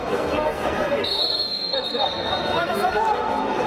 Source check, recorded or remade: remade